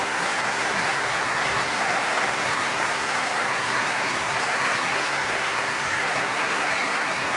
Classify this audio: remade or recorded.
remade